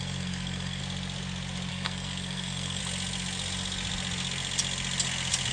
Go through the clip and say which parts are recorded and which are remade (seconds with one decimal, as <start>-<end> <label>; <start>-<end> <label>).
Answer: 0.0-0.8 remade; 0.8-1.7 recorded; 1.7-2.8 remade; 2.8-5.5 recorded